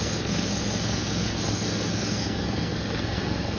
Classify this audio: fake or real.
fake